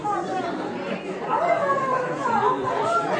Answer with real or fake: real